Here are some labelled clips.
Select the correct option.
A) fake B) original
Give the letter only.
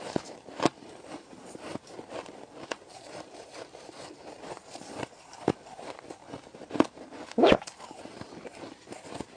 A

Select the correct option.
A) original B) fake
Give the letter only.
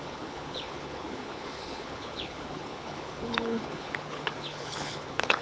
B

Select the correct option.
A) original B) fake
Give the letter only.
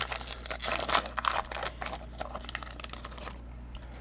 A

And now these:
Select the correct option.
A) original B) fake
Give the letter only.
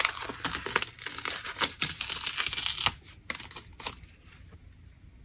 A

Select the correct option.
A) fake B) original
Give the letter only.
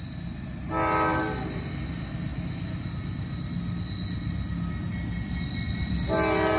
B